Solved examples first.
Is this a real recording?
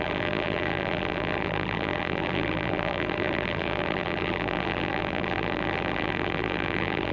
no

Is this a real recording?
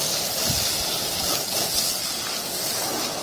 yes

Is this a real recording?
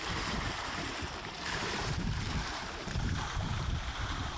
no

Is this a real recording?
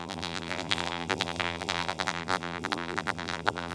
no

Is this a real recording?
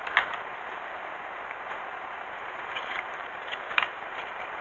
no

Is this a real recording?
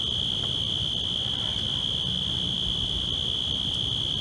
yes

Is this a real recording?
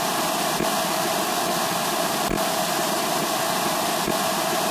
no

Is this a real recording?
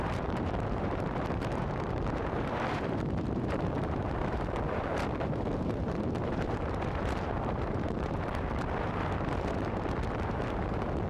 no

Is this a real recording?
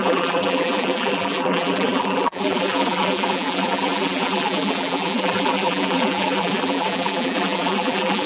no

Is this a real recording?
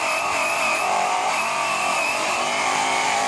no